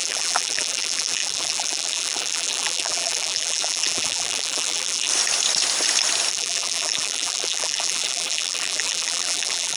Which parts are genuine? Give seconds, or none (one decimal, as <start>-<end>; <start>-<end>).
5.1-6.3